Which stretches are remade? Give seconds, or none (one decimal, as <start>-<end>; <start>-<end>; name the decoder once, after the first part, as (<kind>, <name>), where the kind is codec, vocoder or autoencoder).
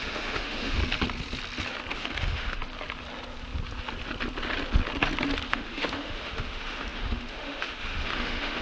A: 0.0-0.8 (autoencoder, DAC-VAE); 1.9-2.6; 5.5-8.6